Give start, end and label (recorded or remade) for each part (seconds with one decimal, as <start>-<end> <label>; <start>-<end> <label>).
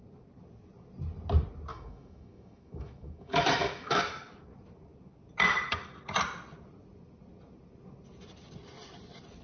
0.0-1.7 recorded; 1.7-4.0 remade; 4.0-9.4 recorded